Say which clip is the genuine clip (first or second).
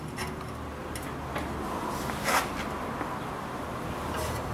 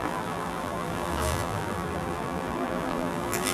first